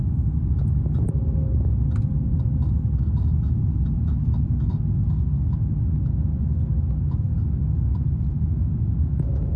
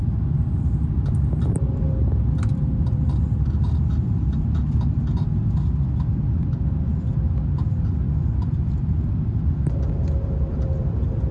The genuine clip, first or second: first